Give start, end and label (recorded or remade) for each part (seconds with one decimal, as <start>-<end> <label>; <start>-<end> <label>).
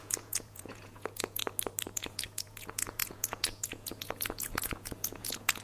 0.0-1.4 remade; 1.4-1.9 recorded; 1.9-5.6 remade